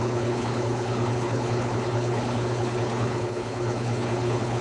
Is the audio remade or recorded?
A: remade